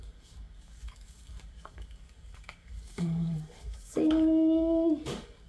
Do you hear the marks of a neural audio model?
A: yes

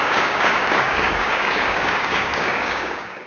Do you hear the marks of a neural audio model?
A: yes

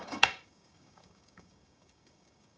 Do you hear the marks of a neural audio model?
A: yes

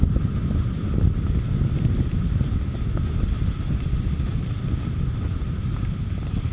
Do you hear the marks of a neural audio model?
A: no